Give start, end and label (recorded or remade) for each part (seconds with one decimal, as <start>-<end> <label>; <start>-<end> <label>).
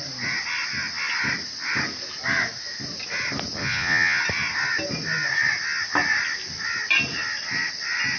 0.0-3.6 recorded; 3.6-4.2 remade; 4.2-8.2 recorded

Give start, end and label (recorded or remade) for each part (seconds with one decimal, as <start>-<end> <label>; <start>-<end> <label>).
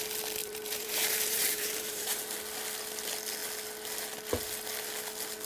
0.0-0.4 recorded; 0.4-2.2 remade; 2.2-5.5 recorded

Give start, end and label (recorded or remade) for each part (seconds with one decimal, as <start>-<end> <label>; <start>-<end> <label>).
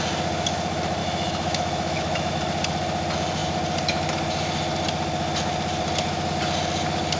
0.0-1.0 recorded; 1.0-2.3 remade; 2.3-7.2 recorded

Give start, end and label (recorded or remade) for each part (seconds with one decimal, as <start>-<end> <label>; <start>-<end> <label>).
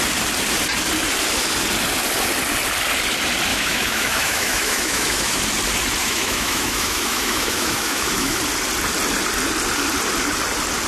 0.0-3.5 recorded; 3.5-5.4 remade; 5.4-6.0 recorded; 6.0-8.4 remade; 8.4-10.9 recorded